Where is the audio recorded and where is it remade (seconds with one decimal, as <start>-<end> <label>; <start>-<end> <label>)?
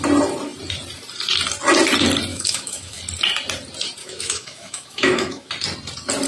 0.0-2.3 recorded; 2.3-3.0 remade; 3.0-4.0 recorded; 4.0-5.5 remade; 5.5-6.3 recorded